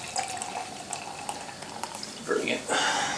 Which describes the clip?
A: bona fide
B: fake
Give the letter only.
A